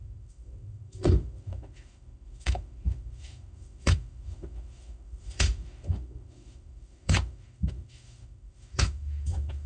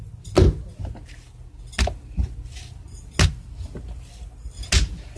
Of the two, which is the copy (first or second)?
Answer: first